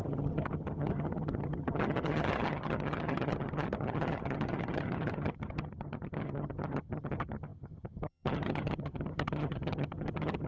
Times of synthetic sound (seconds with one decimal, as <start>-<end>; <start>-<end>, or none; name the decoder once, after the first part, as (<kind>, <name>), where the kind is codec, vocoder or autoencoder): 0.0-10.5 (vocoder, HiFi-GAN)